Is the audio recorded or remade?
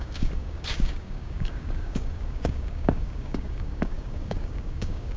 remade